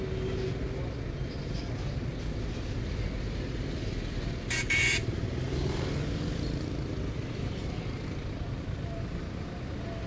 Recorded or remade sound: recorded